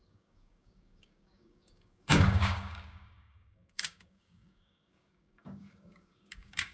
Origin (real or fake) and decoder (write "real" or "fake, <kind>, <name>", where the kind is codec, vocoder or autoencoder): fake, codec, DAC